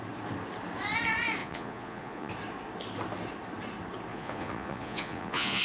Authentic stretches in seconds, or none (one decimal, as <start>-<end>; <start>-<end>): 0.0-1.4; 2.3-4.1